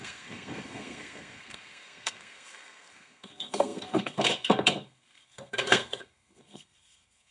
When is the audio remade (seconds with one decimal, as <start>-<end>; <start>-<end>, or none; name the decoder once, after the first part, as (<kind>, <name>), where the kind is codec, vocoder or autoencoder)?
0.0-7.3 (codec, SNAC)